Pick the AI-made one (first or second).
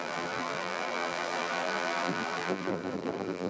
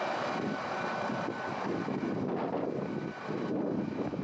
first